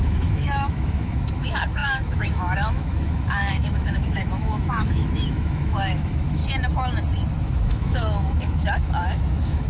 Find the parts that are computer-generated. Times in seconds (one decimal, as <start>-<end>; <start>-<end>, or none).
0.0-6.4; 7.4-9.7